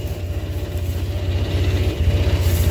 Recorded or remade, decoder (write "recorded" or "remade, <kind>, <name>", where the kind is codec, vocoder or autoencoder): recorded